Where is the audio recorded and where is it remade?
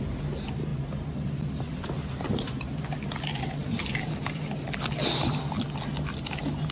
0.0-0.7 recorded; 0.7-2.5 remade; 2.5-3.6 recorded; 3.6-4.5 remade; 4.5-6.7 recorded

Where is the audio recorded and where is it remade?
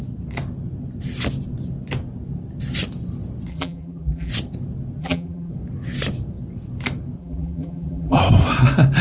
0.0-3.5 recorded; 3.5-4.3 remade; 4.3-5.0 recorded; 5.0-5.5 remade; 5.5-7.2 recorded; 7.2-8.2 remade; 8.2-9.0 recorded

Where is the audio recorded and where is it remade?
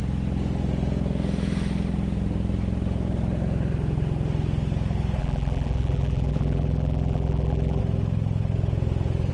0.0-5.2 recorded; 5.2-7.8 remade; 7.8-9.3 recorded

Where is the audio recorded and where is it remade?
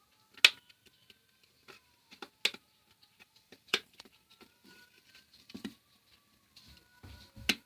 0.0-3.1 recorded; 3.1-6.1 remade; 6.1-7.7 recorded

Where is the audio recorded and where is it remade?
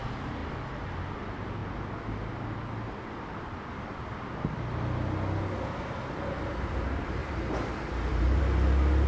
0.0-7.2 recorded; 7.2-8.4 remade; 8.4-9.1 recorded